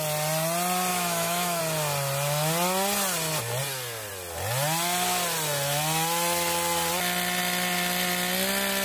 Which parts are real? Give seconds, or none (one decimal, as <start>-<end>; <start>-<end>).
0.0-0.9; 1.6-8.8